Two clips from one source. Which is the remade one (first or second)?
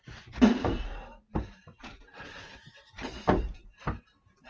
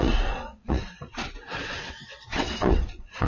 second